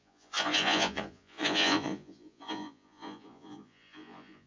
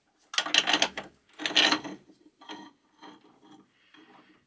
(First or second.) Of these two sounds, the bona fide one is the second